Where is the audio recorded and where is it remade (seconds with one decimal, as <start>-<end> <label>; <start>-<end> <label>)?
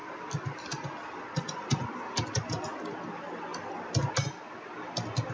0.0-2.1 remade; 2.1-5.3 recorded